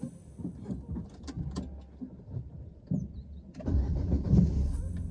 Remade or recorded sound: recorded